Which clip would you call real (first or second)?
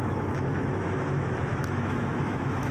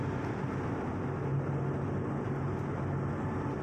second